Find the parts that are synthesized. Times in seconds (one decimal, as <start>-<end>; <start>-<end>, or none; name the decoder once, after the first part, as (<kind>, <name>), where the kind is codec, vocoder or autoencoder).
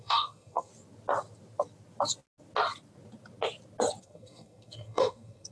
0.0-0.7 (codec, SNAC); 4.0-5.5